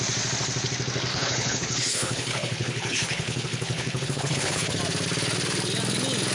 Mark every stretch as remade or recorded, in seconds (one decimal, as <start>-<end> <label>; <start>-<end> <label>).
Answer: 0.0-1.1 recorded; 1.1-4.8 remade; 4.8-6.3 recorded